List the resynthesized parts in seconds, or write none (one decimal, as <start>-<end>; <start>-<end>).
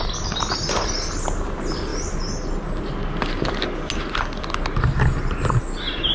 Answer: none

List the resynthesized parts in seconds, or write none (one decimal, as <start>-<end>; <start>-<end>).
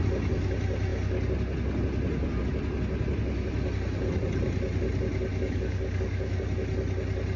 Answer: 5.3-6.4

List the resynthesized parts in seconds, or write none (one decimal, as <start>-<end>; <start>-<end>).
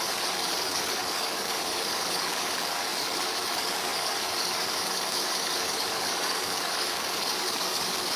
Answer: 0.0-8.2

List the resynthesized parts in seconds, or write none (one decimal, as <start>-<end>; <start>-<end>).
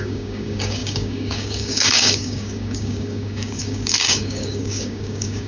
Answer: 0.0-5.5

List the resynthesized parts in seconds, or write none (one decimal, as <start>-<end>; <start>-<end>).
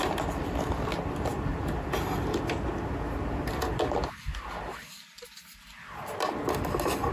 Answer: none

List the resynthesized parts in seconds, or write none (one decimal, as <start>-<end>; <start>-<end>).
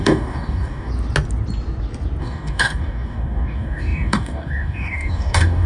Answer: 0.0-0.9; 2.2-5.7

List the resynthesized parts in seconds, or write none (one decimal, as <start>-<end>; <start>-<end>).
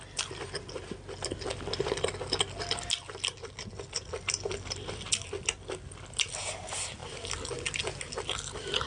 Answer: none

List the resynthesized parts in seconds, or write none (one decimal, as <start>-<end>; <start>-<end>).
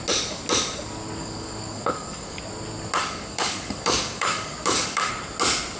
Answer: 1.2-2.4; 3.0-5.1